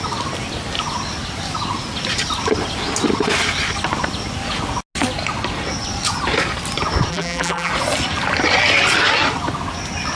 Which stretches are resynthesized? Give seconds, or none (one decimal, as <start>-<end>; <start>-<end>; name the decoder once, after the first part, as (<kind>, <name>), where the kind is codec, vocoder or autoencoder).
7.1-7.7 (vocoder, BigVGAN v2)